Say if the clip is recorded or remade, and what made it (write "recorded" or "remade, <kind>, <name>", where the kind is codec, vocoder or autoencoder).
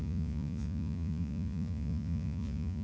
remade, vocoder, Vocos